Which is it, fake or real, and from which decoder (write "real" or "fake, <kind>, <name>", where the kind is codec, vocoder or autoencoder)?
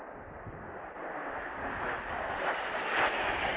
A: real